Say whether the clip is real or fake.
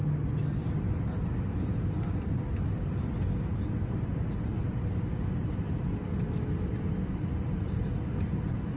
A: real